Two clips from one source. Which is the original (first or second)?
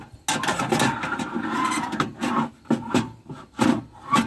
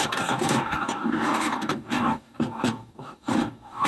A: first